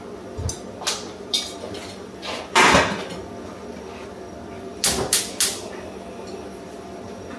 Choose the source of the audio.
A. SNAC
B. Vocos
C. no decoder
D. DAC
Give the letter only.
C